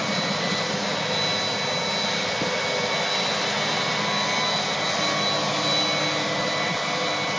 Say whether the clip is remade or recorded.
recorded